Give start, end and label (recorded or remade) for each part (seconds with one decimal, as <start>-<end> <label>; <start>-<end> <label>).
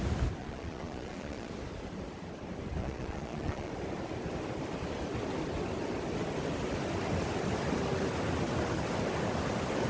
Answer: 0.0-0.4 recorded; 0.4-1.5 remade; 1.5-2.8 recorded; 2.8-3.7 remade; 3.7-9.9 recorded